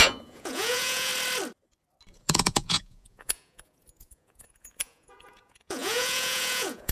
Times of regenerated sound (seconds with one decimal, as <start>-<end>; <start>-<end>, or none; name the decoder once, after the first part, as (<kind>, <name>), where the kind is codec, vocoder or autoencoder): 0.0-1.1 (vocoder, Vocos); 2.1-6.9